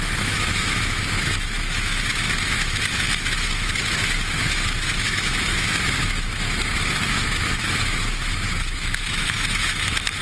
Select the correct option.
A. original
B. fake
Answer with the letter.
B